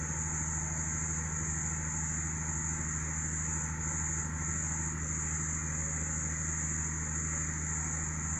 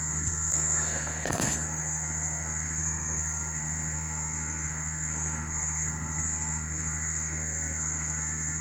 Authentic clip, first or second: first